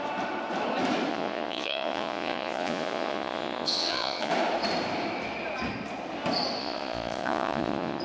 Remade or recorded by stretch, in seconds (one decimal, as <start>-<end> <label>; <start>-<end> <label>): 0.0-1.1 recorded; 1.1-4.3 remade; 4.3-6.6 recorded; 6.6-8.0 remade